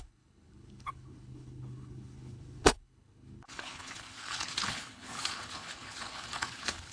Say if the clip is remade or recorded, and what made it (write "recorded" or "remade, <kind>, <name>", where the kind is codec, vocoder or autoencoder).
remade, codec, HILCodec